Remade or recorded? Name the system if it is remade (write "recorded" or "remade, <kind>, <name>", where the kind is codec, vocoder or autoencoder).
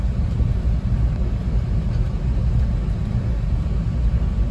recorded